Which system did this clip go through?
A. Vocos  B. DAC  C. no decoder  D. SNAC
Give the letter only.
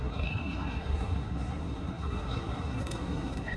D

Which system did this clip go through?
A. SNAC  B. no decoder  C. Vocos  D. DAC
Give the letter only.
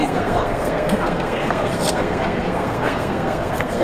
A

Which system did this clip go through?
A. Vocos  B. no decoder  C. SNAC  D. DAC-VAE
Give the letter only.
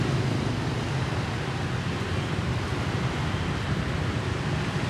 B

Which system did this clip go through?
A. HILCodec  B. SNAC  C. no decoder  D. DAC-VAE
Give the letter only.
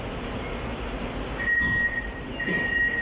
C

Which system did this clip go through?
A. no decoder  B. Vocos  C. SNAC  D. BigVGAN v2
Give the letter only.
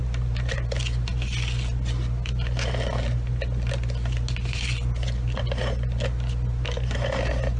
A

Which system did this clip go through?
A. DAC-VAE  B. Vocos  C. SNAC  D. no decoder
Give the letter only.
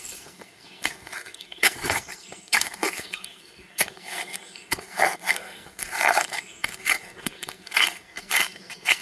C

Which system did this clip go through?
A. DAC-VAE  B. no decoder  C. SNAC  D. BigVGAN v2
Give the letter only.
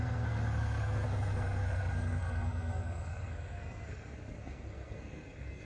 C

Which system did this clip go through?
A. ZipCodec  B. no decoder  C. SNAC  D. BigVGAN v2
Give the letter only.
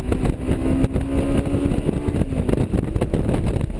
B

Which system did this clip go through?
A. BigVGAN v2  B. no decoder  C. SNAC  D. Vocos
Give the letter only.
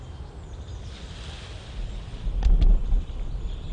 B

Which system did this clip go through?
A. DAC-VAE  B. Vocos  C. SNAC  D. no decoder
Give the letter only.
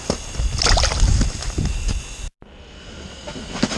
D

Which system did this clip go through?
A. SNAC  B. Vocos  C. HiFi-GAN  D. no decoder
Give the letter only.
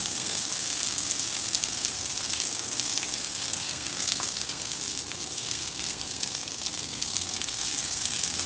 A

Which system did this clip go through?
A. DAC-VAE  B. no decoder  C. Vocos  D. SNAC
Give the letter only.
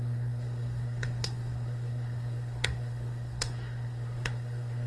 D